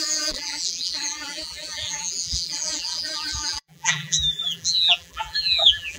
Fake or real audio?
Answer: fake